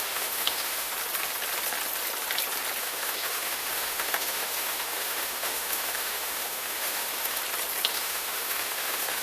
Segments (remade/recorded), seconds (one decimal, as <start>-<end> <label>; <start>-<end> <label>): 0.0-0.9 remade; 0.9-2.8 recorded; 2.8-7.4 remade; 7.4-7.9 recorded; 7.9-9.2 remade